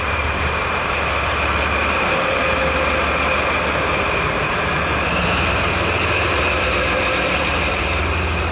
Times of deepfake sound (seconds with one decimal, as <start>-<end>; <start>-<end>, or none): 0.0-2.6; 7.4-8.5